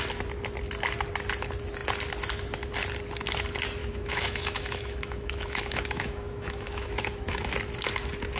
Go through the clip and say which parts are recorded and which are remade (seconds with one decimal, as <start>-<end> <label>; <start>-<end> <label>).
0.0-3.8 recorded; 3.8-7.5 remade; 7.5-8.4 recorded